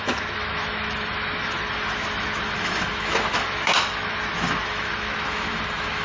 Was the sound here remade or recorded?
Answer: remade